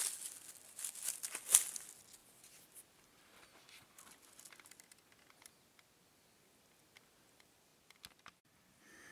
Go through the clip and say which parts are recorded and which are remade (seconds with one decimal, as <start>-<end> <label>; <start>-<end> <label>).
0.0-9.1 recorded